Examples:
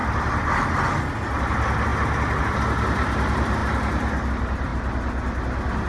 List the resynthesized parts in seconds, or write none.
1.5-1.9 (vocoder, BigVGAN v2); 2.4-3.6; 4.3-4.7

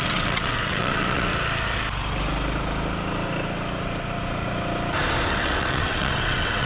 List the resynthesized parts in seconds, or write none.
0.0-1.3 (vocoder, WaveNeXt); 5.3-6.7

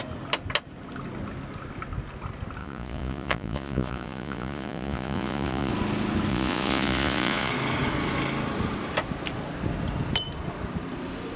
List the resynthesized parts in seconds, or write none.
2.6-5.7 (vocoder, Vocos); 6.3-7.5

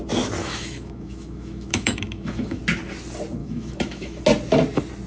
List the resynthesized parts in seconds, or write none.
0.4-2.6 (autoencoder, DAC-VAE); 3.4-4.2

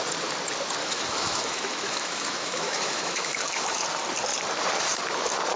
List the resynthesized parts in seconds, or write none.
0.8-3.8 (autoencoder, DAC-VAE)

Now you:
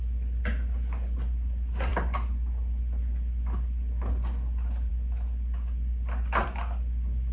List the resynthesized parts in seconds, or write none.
none